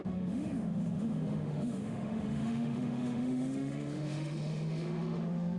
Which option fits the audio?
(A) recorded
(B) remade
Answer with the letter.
B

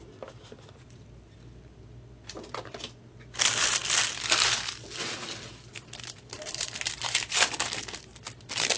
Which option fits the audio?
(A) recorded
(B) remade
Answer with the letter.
A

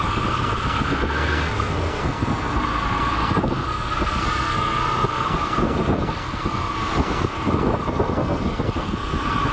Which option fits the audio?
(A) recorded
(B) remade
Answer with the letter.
B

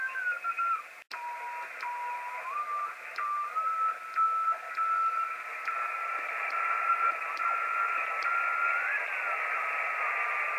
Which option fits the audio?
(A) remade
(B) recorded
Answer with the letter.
B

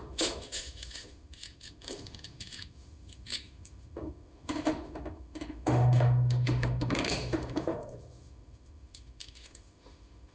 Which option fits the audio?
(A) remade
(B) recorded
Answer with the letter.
A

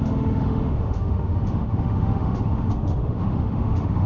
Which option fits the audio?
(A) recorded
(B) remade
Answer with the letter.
B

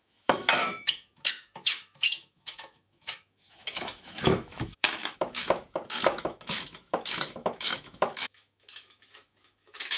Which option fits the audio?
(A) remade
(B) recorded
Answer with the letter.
A